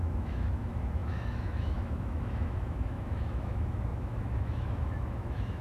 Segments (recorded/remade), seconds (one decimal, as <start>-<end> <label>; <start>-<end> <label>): 0.0-5.6 remade